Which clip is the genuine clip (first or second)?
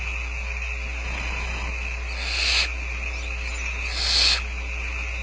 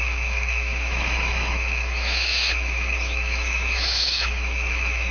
first